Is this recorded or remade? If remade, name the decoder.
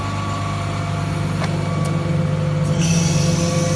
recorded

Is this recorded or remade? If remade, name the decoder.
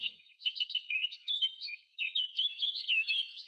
remade, codec, SNAC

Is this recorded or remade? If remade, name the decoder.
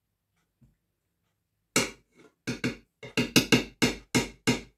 recorded